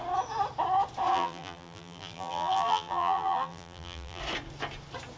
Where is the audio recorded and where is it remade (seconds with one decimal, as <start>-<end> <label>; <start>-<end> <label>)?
0.0-1.1 recorded; 1.1-4.2 remade; 4.2-5.2 recorded